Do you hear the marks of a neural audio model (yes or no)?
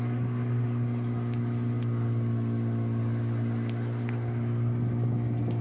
no